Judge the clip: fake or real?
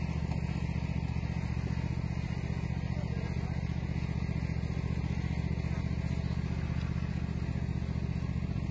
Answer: real